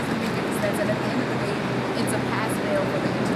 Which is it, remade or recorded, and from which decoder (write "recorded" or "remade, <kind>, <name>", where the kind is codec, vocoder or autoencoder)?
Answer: recorded